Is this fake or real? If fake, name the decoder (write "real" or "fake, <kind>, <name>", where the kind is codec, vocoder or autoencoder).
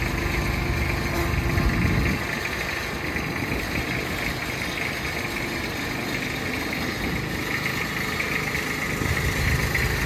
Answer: real